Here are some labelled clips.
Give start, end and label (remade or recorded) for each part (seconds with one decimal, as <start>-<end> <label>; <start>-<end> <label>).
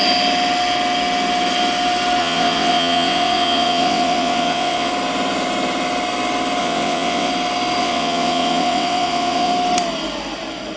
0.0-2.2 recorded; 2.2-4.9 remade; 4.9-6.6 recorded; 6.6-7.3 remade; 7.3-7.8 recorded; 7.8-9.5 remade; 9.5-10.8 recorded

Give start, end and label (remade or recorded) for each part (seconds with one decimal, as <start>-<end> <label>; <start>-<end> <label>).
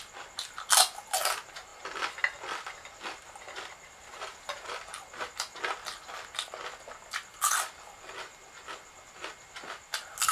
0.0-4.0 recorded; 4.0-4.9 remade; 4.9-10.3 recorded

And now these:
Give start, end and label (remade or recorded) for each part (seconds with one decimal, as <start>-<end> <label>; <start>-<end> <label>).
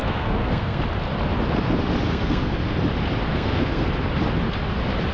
0.0-0.8 remade; 0.8-2.1 recorded; 2.1-2.6 remade; 2.6-3.3 recorded; 3.3-3.9 remade; 3.9-5.1 recorded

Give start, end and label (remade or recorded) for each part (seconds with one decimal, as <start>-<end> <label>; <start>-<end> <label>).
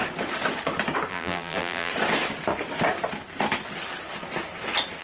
0.0-1.1 recorded; 1.1-1.9 remade; 1.9-5.0 recorded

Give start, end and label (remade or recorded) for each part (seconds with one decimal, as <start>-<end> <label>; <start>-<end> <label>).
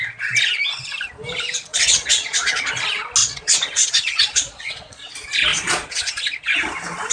0.0-1.7 recorded; 1.7-2.7 remade; 2.7-3.2 recorded; 3.2-5.1 remade; 5.1-5.5 recorded; 5.5-6.1 remade; 6.1-7.1 recorded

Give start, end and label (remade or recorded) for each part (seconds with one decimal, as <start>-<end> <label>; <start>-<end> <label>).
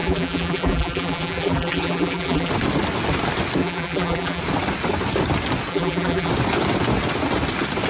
0.0-2.5 remade; 2.5-3.6 recorded; 3.6-4.4 remade; 4.4-5.7 recorded; 5.7-6.3 remade; 6.3-7.9 recorded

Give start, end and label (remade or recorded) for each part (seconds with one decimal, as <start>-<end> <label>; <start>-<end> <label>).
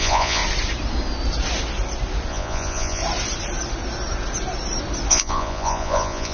0.0-0.4 remade; 0.4-2.3 recorded; 2.3-3.0 remade; 3.0-5.1 recorded; 5.1-6.3 remade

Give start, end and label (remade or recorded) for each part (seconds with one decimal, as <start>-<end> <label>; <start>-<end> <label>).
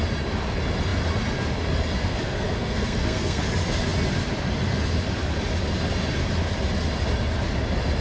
0.0-2.0 recorded; 2.0-3.4 remade; 3.4-8.0 recorded